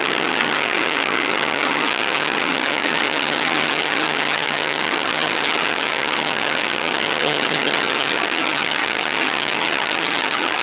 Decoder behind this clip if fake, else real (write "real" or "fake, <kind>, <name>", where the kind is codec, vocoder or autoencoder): fake, vocoder, HiFi-GAN